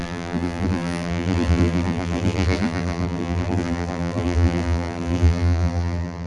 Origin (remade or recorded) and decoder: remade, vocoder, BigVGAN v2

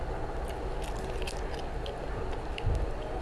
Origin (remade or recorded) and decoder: recorded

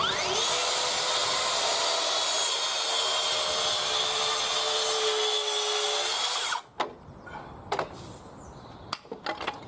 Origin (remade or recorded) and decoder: recorded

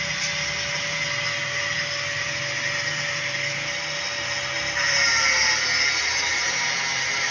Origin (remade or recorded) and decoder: recorded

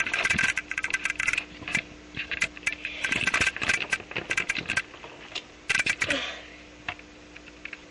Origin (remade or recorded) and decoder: recorded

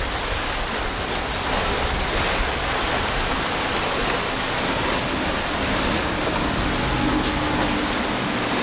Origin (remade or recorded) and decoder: recorded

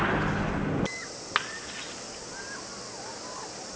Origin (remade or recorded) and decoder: recorded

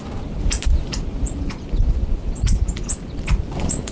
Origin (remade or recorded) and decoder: recorded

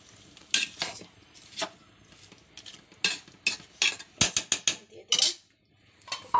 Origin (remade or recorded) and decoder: recorded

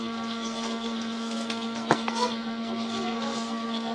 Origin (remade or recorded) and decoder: remade, codec, SNAC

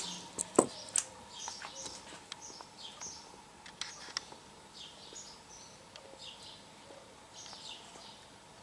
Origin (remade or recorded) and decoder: recorded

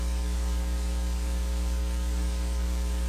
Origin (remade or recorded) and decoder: remade, codec, DAC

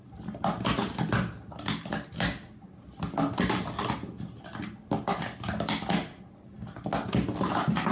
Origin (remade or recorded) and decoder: recorded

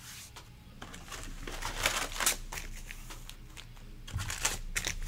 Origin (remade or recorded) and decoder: recorded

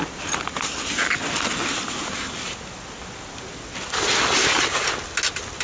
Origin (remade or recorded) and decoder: recorded